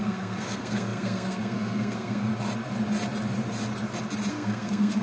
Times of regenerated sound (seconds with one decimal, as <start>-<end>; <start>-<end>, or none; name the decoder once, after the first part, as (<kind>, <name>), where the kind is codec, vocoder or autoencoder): 0.0-2.3 (codec, SNAC); 4.3-5.0